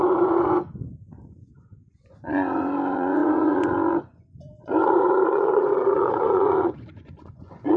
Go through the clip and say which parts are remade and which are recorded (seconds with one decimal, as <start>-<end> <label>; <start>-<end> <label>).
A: 0.0-7.8 remade